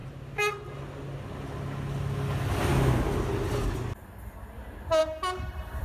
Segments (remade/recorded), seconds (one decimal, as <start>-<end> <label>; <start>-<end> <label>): 0.0-5.0 recorded; 5.0-5.8 remade